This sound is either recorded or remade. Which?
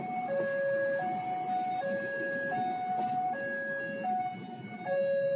recorded